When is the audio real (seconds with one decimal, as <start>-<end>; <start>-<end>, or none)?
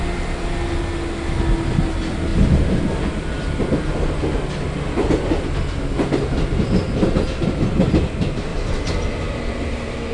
0.0-10.1